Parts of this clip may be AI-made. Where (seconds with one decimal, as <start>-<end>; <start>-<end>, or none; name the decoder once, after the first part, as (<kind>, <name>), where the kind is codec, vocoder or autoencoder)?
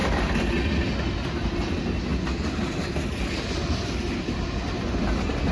0.0-0.8 (vocoder, BigVGAN v2)